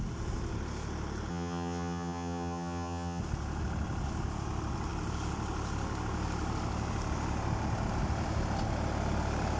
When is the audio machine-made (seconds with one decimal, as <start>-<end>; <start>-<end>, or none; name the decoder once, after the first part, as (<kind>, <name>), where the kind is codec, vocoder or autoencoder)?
1.3-3.2 (vocoder, HiFi-GAN)